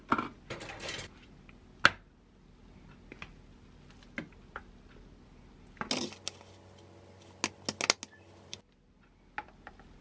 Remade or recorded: recorded